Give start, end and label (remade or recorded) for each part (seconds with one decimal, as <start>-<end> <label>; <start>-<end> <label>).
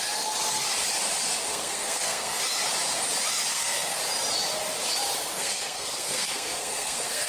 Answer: 0.0-1.5 recorded; 1.5-2.4 remade; 2.4-3.5 recorded; 3.5-4.0 remade; 4.0-5.3 recorded; 5.3-7.3 remade